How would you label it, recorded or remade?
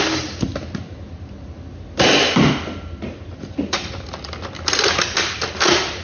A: recorded